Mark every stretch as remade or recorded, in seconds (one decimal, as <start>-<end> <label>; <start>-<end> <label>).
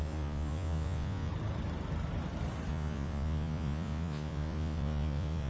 0.0-1.3 remade; 1.3-2.7 recorded; 2.7-5.5 remade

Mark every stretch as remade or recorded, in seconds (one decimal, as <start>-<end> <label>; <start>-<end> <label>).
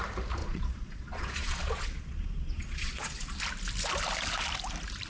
0.0-0.4 recorded; 0.4-3.4 remade; 3.4-5.1 recorded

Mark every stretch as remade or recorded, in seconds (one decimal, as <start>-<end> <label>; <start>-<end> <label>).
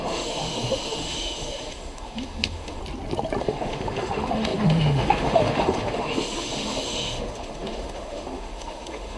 0.0-2.8 remade; 2.8-3.4 recorded; 3.4-9.2 remade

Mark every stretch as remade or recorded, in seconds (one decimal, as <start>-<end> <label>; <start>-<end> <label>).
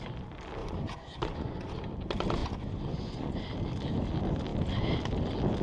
0.0-0.6 recorded; 0.6-1.8 remade; 1.8-2.4 recorded; 2.4-3.4 remade; 3.4-5.6 recorded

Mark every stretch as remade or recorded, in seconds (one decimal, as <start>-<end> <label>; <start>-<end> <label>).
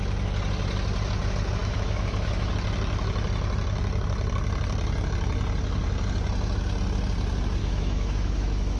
0.0-1.6 recorded; 1.6-2.5 remade; 2.5-7.6 recorded; 7.6-8.8 remade